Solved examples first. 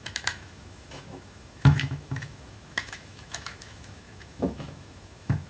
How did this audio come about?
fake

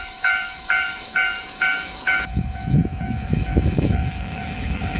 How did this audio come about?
fake